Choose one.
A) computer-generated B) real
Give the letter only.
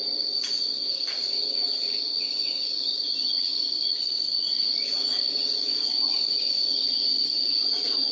A